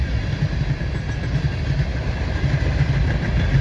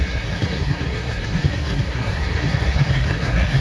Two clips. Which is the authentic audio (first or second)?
first